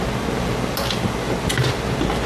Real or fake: real